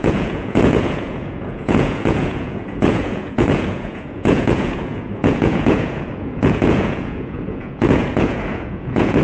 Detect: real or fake fake